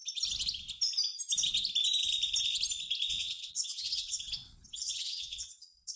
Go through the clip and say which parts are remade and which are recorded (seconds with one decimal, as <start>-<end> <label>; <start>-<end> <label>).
0.0-3.1 recorded; 3.1-6.0 remade